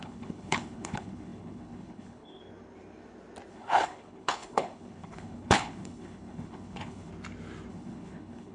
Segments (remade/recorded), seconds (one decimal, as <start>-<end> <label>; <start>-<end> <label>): 0.0-2.4 remade; 2.4-3.5 recorded; 3.5-7.1 remade; 7.1-7.7 recorded; 7.7-8.5 remade